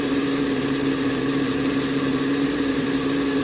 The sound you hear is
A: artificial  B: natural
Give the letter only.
A